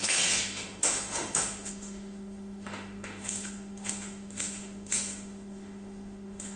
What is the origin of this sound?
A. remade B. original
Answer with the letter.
A